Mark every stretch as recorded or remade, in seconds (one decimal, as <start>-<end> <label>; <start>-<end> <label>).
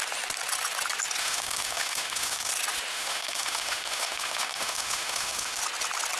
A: 0.0-1.2 recorded; 1.2-2.5 remade; 2.5-2.9 recorded; 2.9-5.6 remade; 5.6-6.2 recorded